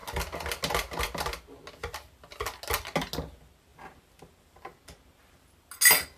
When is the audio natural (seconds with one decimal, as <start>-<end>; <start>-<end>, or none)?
0.0-6.2